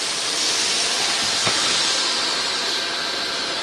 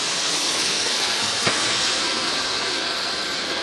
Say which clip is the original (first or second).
first